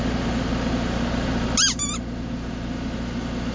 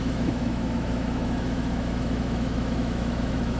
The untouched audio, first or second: first